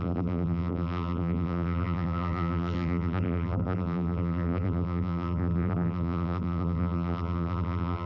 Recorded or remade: remade